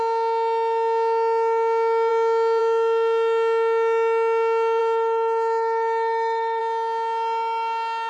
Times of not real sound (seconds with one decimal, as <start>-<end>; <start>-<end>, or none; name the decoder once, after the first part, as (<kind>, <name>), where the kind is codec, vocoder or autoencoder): 4.8-6.6 (autoencoder, DAC-VAE)